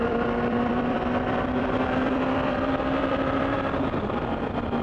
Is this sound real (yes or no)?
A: no